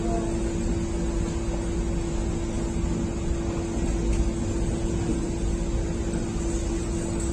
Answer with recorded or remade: recorded